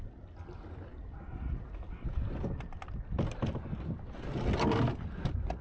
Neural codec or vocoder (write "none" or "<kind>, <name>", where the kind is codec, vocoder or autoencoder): none